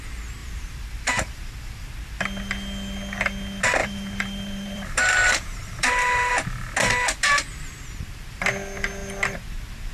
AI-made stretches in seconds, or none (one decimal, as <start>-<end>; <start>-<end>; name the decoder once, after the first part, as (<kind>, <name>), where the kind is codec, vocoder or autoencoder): 0.4-1.5 (vocoder, BigVGAN v2); 3.8-6.3; 6.8-7.4